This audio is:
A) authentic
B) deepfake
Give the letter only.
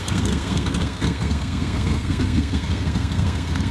B